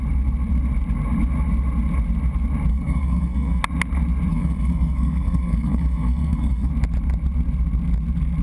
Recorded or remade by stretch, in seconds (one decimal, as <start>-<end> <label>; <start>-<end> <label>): 0.0-2.7 recorded; 2.7-3.6 remade; 3.6-4.3 recorded; 4.3-6.7 remade; 6.7-8.4 recorded